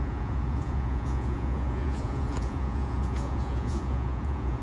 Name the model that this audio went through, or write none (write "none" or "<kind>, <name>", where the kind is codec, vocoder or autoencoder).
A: vocoder, Vocos